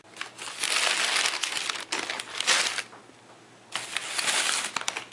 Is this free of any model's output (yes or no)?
yes